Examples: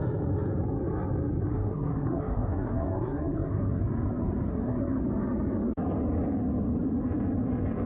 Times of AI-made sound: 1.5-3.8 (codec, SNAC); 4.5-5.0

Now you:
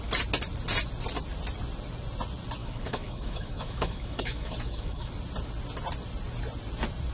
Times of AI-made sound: 2.6-5.1 (autoencoder, DAC-VAE)

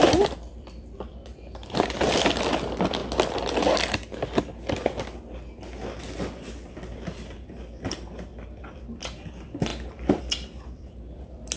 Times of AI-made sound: 0.0-3.0 (vocoder, BigVGAN v2); 6.7-9.7; 10.2-11.6

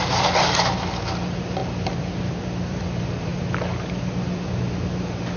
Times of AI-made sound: 0.0-3.3 (vocoder, BigVGAN v2)